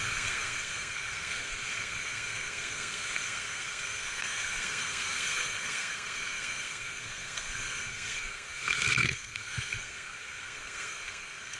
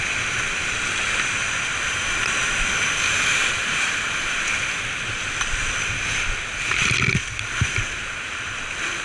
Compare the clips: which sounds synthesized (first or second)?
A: first